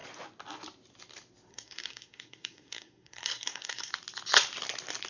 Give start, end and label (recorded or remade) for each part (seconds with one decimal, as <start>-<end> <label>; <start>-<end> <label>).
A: 0.0-1.5 recorded; 1.5-3.9 remade; 3.9-5.1 recorded